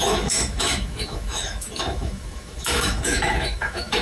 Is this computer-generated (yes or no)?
yes